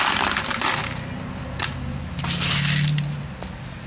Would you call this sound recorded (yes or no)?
yes